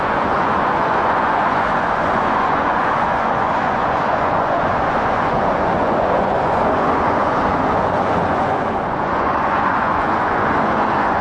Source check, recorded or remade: remade